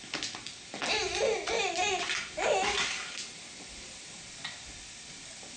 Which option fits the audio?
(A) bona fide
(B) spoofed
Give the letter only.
A